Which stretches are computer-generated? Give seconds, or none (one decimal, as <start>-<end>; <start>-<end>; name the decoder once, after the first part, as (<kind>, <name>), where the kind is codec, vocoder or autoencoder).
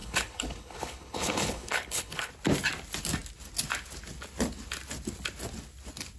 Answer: 0.0-2.3 (codec, HILCodec)